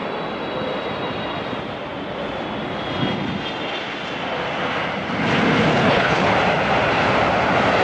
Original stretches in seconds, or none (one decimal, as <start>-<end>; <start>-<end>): 0.0-5.7; 6.3-7.8